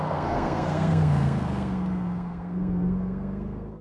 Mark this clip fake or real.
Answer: fake